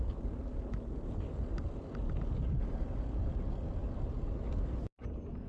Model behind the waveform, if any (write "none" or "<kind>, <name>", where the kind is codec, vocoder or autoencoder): none